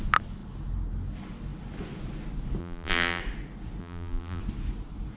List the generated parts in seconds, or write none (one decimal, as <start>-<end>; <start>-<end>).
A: 2.6-3.2; 3.8-4.4